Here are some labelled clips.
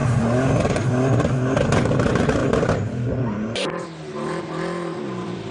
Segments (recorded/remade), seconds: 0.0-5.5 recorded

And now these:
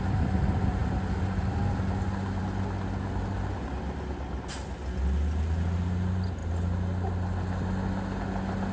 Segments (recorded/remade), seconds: 0.0-8.7 recorded

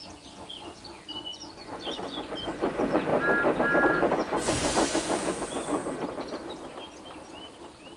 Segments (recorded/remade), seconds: 0.0-3.1 remade; 3.1-3.9 recorded; 3.9-5.8 remade; 5.8-8.0 recorded

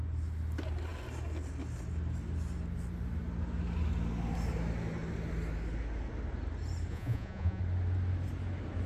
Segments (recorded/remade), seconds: 0.0-6.9 recorded; 6.9-7.6 remade; 7.6-8.9 recorded

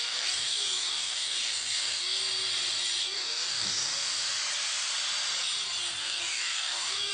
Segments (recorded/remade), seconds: 0.0-2.2 remade; 2.2-3.0 recorded; 3.0-4.2 remade; 4.2-6.0 recorded; 6.0-7.1 remade